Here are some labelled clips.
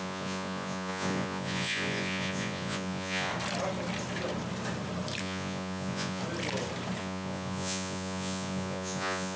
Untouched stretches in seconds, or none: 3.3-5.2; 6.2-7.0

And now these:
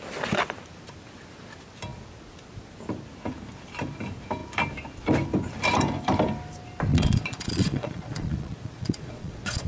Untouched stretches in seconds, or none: 0.0-6.9